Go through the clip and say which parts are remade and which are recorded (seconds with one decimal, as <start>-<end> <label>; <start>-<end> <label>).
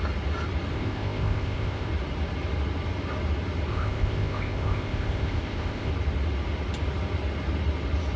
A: 0.0-0.7 recorded; 0.7-1.9 remade; 1.9-3.7 recorded; 3.7-5.9 remade; 5.9-8.2 recorded